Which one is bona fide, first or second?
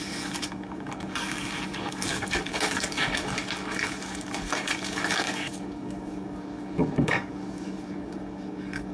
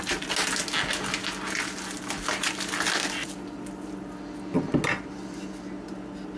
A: second